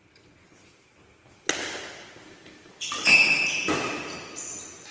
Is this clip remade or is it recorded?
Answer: recorded